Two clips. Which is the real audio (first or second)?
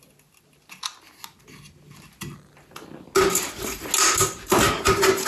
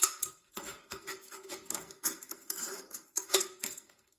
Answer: first